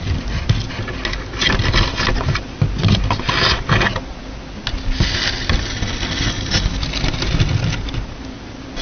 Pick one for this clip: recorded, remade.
recorded